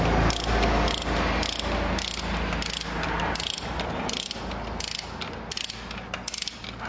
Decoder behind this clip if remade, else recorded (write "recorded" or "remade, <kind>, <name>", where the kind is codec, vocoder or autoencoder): recorded